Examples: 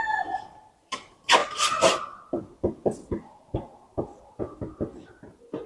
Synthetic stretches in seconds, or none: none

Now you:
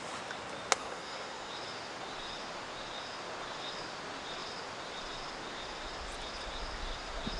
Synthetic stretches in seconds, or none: 0.8-1.5 (codec, SNAC)

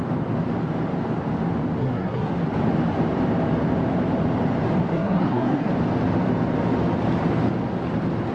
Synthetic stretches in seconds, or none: 1.8-2.3 (codec, SNAC); 4.9-5.7

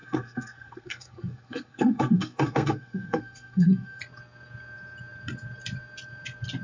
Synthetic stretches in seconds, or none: 0.0-4.0 (codec, SNAC)

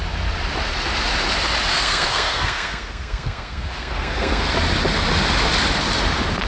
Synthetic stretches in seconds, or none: 1.7-4.5 (codec, SNAC)